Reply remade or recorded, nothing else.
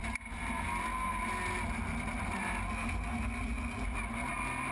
recorded